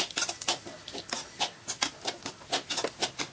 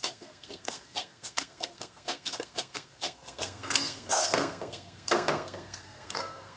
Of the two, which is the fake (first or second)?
second